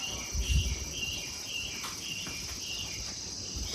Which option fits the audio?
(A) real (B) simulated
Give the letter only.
A